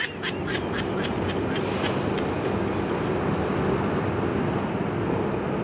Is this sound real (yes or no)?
yes